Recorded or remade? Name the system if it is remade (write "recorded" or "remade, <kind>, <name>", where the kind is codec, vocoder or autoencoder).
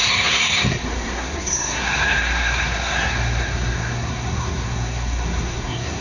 remade, codec, SNAC